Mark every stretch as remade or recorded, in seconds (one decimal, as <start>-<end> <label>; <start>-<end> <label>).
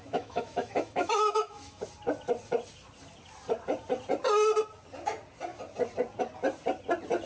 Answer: 0.0-1.8 remade; 1.8-7.3 recorded